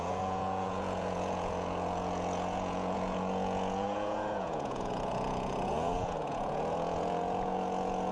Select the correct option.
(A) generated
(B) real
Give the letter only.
A